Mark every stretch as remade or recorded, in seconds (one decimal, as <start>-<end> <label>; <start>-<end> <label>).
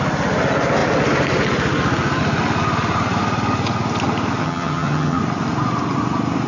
0.0-4.4 recorded; 4.4-5.2 remade; 5.2-6.5 recorded